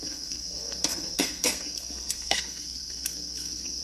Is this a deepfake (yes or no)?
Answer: yes